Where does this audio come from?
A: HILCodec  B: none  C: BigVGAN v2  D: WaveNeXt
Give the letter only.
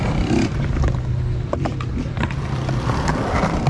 B